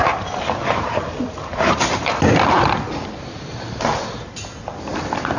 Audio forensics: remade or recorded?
recorded